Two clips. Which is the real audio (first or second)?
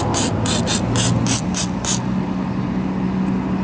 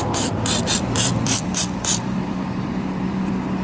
first